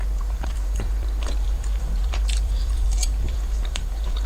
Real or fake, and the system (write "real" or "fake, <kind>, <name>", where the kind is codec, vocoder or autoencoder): fake, vocoder, BigVGAN v2